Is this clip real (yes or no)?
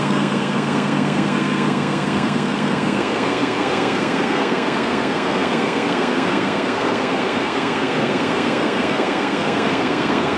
no